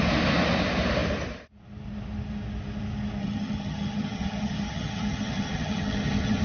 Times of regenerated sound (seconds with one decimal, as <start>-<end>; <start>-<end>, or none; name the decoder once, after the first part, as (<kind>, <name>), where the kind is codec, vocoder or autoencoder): 3.2-6.4 (vocoder, HiFi-GAN)